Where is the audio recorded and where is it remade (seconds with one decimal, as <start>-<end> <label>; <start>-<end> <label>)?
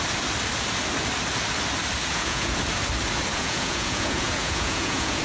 0.0-2.0 recorded; 2.0-2.6 remade; 2.6-3.3 recorded; 3.3-5.2 remade